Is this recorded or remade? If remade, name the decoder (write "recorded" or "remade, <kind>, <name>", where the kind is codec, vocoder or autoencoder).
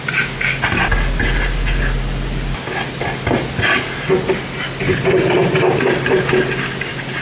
recorded